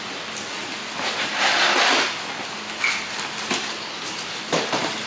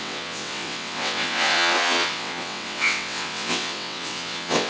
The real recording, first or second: first